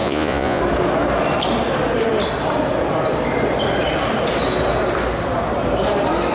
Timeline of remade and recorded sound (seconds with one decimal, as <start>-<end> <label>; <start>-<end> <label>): 0.0-0.6 remade; 0.6-6.3 recorded